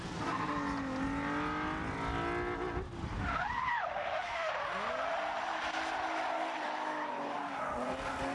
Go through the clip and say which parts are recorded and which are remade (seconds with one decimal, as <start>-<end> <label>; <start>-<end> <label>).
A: 0.0-3.7 recorded; 3.7-4.5 remade; 4.5-8.3 recorded